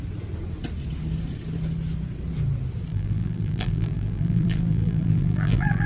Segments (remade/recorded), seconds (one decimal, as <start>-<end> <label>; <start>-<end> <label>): 0.0-2.9 recorded; 2.9-5.9 remade